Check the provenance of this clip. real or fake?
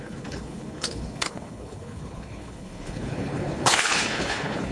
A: fake